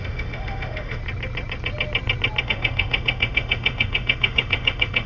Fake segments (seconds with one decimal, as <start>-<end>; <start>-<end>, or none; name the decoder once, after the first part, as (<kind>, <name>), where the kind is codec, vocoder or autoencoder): 0.0-1.0 (autoencoder, DAC-VAE); 2.4-5.1